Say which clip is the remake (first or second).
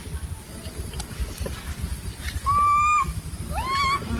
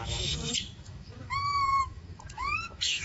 second